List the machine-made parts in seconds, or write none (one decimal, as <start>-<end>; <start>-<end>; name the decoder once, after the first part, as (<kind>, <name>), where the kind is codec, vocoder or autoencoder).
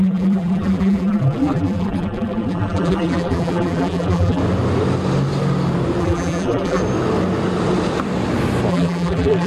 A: 0.0-4.4 (vocoder, BigVGAN v2); 6.0-6.8; 8.7-9.5